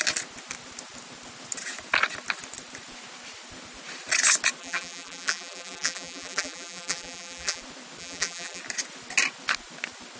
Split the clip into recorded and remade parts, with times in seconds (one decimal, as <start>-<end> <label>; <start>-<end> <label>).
0.0-4.6 recorded; 4.6-7.6 remade; 7.6-8.0 recorded; 8.0-8.6 remade; 8.6-10.2 recorded